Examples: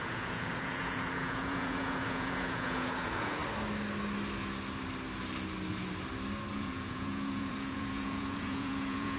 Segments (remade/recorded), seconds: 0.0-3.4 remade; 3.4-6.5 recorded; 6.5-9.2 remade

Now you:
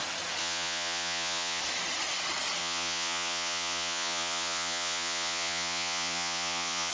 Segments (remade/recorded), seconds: 0.0-0.4 recorded; 0.4-1.6 remade; 1.6-2.6 recorded; 2.6-6.9 remade

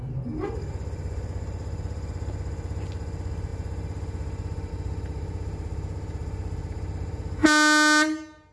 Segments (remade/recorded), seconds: 0.0-8.5 recorded

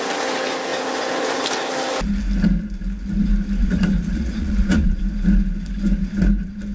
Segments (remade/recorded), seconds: 0.0-3.6 recorded; 3.6-5.0 remade; 5.0-6.7 recorded

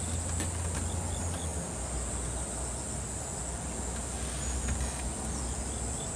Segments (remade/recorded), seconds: 0.0-6.2 recorded

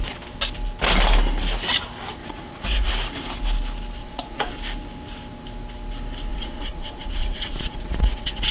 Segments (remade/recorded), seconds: 0.0-2.2 recorded; 2.2-2.9 remade; 2.9-4.0 recorded; 4.0-4.5 remade; 4.5-6.3 recorded; 6.3-8.5 remade

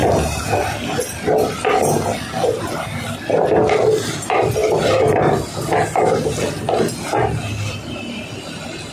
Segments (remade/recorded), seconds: 0.0-8.9 recorded

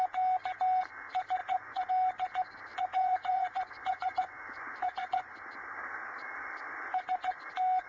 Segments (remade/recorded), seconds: 0.0-1.4 recorded; 1.4-1.9 remade; 1.9-2.7 recorded; 2.7-5.3 remade; 5.3-7.9 recorded